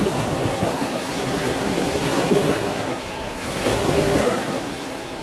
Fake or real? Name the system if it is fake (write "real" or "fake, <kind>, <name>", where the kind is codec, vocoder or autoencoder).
fake, codec, SNAC